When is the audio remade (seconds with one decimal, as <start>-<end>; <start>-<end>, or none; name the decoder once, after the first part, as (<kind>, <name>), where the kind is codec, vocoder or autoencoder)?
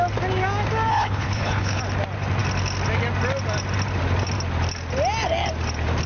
0.9-1.8 (codec, HILCodec)